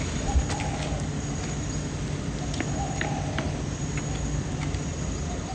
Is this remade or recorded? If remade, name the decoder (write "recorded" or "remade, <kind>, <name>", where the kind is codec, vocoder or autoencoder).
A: recorded